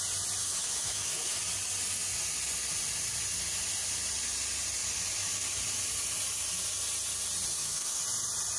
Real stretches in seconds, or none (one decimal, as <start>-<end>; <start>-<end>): 0.0-0.4; 1.4-7.5; 8.0-8.6